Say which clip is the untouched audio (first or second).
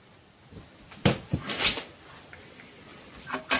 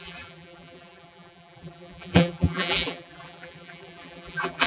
first